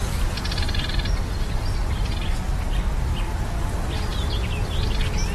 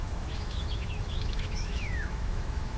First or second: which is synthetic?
second